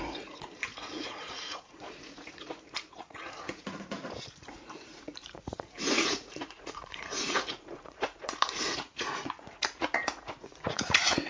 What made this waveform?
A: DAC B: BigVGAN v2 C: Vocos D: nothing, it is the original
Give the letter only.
C